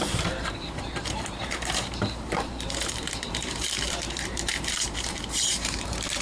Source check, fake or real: fake